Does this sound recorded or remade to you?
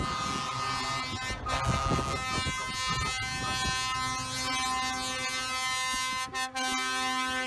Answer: recorded